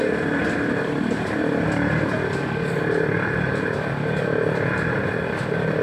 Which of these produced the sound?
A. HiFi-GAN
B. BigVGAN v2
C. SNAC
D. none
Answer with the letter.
D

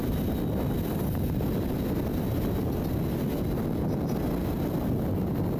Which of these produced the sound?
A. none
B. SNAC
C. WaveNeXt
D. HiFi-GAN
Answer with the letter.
A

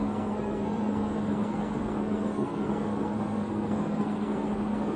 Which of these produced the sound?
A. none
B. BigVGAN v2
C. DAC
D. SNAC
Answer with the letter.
D